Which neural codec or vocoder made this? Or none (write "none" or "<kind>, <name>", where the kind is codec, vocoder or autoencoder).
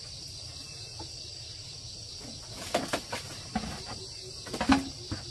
none